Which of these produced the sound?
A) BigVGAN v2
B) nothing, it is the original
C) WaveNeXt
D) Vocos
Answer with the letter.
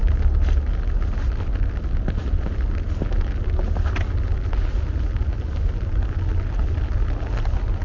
B